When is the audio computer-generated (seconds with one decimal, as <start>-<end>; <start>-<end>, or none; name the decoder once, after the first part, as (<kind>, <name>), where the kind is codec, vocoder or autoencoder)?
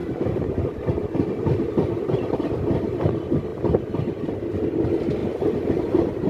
5.2-5.7 (vocoder, BigVGAN v2)